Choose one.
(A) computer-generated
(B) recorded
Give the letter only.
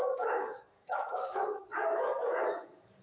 A